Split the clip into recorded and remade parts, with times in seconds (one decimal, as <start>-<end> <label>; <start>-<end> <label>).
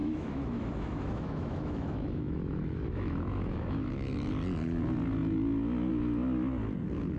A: 0.0-4.3 remade; 4.3-7.2 recorded